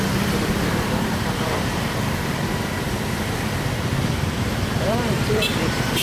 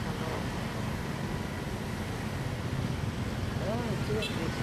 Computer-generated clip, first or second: first